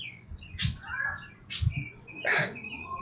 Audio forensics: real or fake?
fake